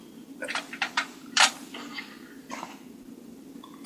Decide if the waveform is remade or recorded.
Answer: remade